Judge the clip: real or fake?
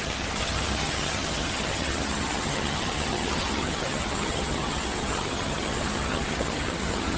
fake